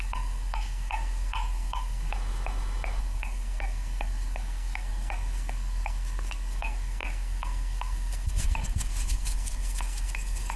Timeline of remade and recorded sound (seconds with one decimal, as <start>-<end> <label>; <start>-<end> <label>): 0.0-2.1 remade; 2.1-3.0 recorded; 3.0-10.6 remade